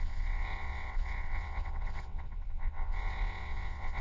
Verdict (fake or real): fake